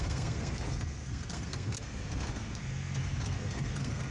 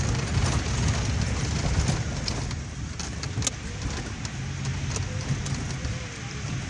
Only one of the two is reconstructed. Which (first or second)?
first